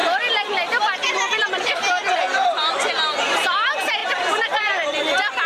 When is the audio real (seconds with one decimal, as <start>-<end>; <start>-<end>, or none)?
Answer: 2.7-5.5